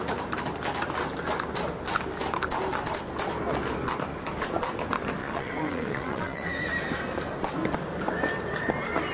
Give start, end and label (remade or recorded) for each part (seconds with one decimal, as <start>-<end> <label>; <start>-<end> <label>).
0.0-5.2 recorded; 5.2-6.5 remade; 6.5-9.1 recorded